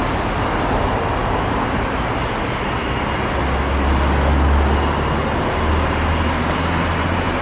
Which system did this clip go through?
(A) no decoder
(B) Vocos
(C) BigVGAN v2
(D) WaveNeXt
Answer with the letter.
A